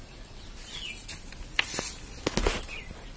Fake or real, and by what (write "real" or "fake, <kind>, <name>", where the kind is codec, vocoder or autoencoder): real